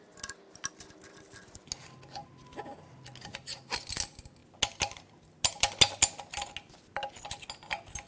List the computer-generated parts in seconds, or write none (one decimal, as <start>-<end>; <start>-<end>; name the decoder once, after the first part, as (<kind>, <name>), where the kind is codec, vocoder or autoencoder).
none